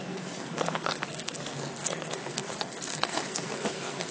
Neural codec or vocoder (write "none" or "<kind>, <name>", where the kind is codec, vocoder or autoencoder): codec, SNAC